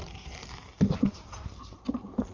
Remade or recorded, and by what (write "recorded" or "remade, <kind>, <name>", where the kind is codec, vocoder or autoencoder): recorded